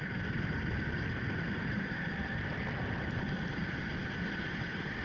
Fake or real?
real